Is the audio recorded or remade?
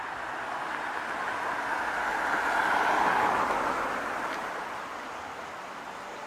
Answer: recorded